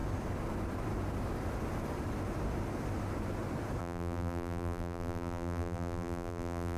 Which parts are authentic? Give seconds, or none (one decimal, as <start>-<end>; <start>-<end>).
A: 0.0-3.8